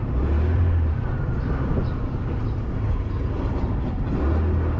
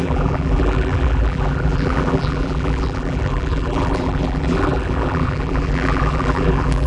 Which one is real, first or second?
first